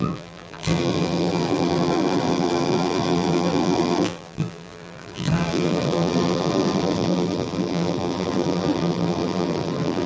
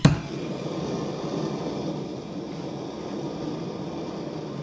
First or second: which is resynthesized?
first